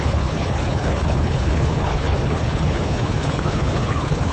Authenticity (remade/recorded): remade